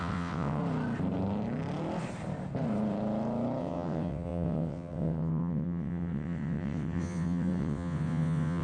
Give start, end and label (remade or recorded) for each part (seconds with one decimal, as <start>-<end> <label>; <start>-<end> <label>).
0.0-0.6 remade; 0.6-3.6 recorded; 3.6-8.6 remade